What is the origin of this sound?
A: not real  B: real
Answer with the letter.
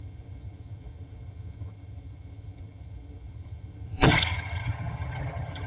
A